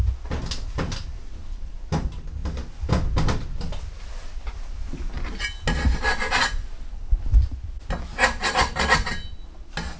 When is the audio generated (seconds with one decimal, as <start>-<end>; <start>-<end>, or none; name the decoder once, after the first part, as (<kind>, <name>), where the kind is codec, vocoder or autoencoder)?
none